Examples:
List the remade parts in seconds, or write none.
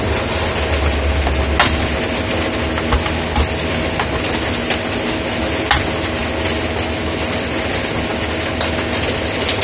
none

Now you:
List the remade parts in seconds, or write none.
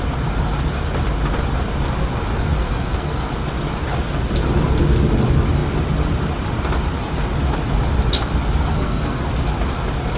2.6-3.3 (codec, SNAC); 8.7-9.2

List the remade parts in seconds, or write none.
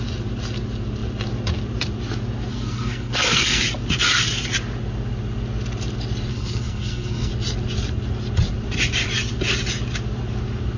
2.5-3.6 (codec, SNAC); 6.3-7.3